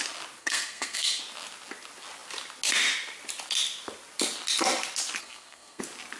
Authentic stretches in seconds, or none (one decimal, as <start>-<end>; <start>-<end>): 0.0-0.4; 1.2-5.2; 5.8-6.2